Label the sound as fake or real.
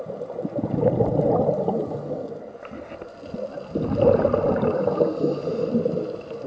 real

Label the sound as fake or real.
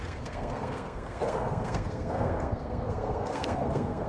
fake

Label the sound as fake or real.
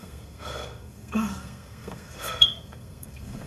fake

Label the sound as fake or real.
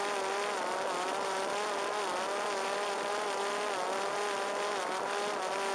real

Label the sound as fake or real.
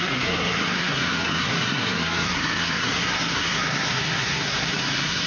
fake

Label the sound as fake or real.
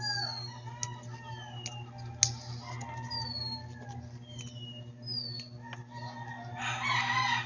real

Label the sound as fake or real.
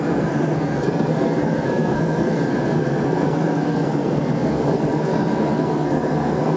fake